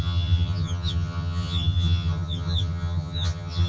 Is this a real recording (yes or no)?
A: no